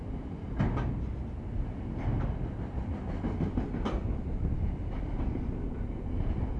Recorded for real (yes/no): yes